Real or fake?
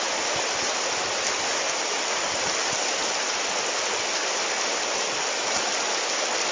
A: real